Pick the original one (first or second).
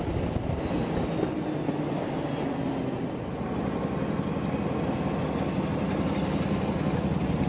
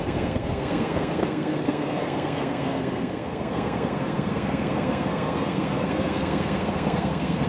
first